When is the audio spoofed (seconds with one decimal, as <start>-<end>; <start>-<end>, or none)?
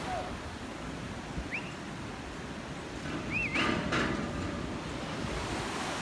none